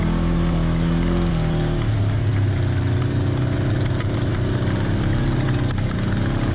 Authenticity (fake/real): real